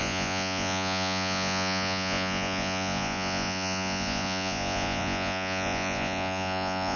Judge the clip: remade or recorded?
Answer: remade